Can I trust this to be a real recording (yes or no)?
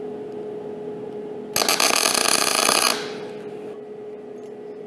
yes